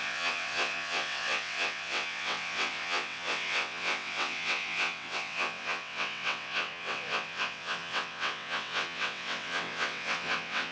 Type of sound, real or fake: fake